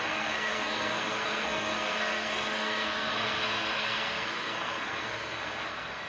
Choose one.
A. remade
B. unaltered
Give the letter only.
A